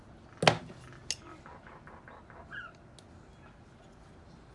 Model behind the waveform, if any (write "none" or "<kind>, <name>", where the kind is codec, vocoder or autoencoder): none